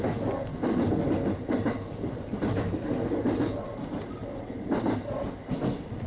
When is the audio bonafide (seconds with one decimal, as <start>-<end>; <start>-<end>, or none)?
0.0-6.1